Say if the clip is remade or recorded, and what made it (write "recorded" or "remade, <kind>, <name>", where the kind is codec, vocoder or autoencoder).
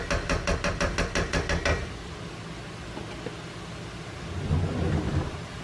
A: recorded